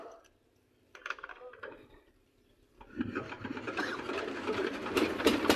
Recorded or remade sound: remade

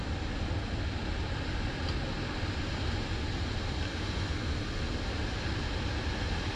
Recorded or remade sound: recorded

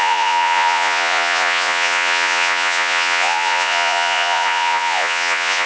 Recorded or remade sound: remade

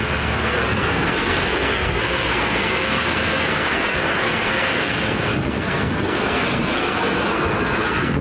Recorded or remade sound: remade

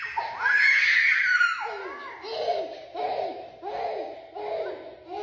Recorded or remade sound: recorded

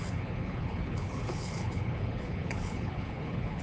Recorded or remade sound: remade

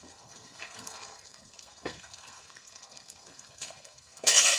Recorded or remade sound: remade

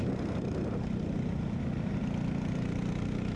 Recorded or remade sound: recorded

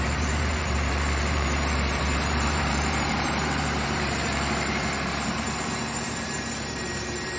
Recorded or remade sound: remade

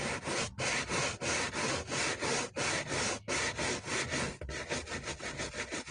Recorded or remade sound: recorded